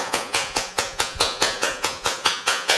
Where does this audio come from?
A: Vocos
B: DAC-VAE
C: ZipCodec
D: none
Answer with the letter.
A